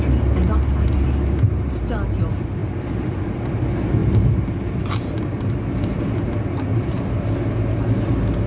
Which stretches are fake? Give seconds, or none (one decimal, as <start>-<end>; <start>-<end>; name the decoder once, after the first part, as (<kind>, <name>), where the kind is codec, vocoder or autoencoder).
none